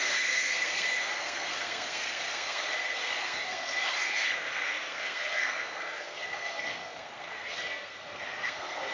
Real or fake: fake